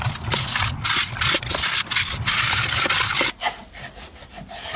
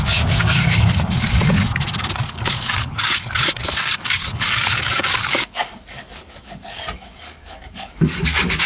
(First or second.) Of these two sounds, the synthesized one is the second